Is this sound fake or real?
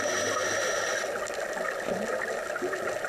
real